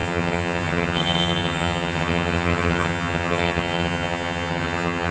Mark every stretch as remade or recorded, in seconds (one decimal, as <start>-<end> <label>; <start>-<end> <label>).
0.0-5.1 remade